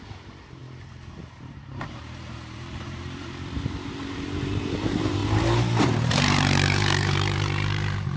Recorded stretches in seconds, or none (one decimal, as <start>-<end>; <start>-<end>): none